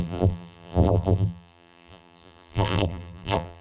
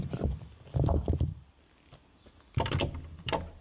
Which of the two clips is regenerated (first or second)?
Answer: first